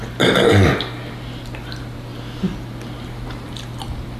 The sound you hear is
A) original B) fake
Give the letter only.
A